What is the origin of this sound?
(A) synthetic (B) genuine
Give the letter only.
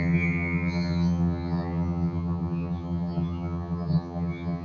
A